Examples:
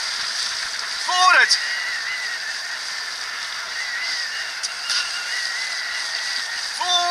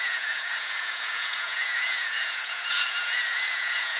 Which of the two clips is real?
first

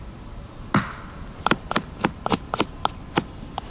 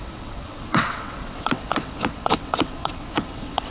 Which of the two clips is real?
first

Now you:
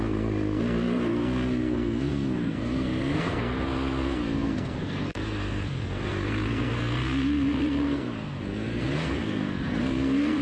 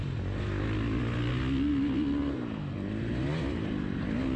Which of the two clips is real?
second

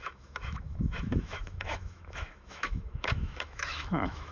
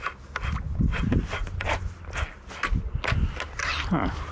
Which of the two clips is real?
second